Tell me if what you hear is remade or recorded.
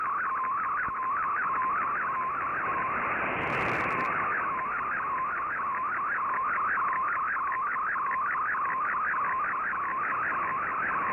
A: recorded